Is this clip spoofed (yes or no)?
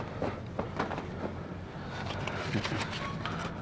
no